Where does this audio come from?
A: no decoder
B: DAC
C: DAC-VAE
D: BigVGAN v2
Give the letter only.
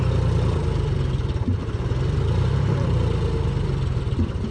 A